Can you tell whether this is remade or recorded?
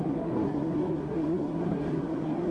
remade